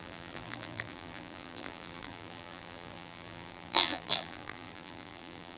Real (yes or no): no